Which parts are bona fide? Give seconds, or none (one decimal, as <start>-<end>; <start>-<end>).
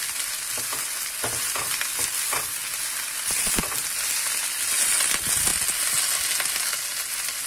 0.0-7.5